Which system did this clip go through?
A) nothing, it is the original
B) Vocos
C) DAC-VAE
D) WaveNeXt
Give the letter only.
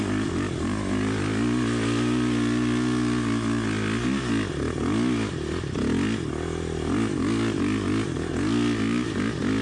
A